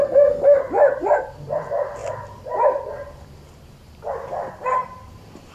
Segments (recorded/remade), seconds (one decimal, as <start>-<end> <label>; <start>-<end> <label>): 0.0-0.6 remade; 0.6-5.5 recorded